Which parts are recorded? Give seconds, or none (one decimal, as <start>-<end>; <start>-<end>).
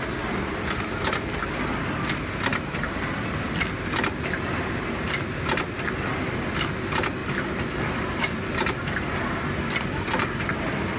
0.0-11.0